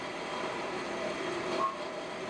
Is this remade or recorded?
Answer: remade